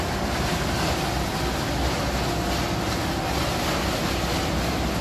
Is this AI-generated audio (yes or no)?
no